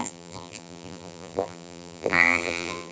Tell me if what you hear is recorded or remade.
remade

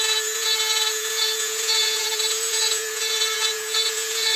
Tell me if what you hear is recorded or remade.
remade